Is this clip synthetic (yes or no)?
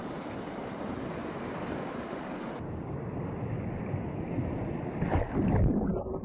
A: no